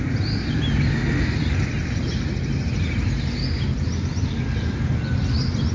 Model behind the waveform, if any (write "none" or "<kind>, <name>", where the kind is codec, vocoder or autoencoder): none